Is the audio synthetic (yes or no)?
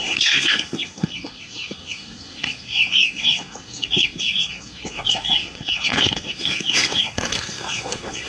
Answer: yes